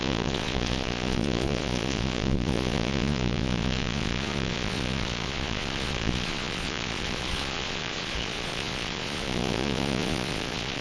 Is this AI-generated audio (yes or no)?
yes